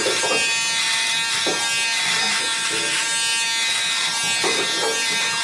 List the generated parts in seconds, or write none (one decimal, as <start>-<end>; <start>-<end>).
none